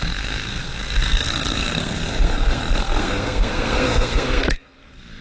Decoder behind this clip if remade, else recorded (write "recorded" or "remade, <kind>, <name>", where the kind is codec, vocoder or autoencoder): remade, codec, SNAC